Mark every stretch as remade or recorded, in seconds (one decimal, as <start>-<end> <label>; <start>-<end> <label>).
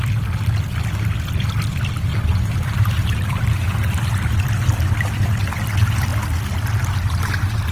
0.0-2.1 recorded; 2.1-4.5 remade; 4.5-7.7 recorded